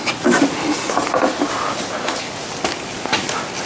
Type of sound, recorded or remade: recorded